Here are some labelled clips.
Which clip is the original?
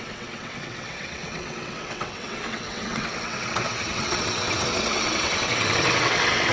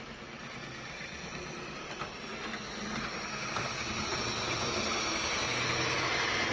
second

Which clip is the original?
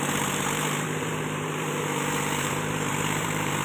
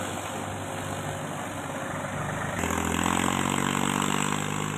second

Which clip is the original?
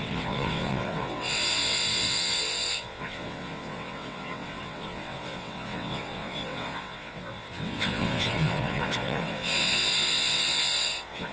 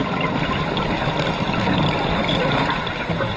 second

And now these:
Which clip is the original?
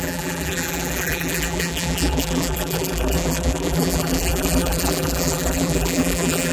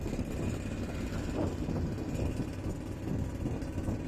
second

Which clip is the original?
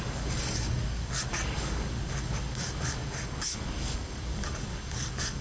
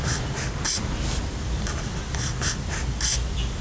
second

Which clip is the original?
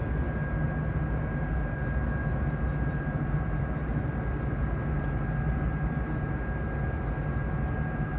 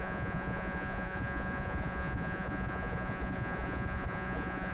first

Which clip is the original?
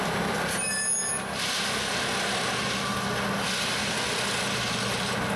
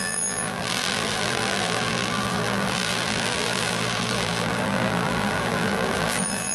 first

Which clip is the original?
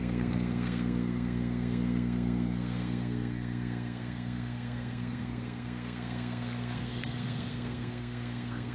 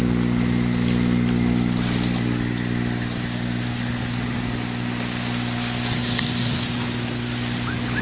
second